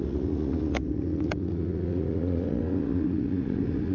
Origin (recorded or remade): remade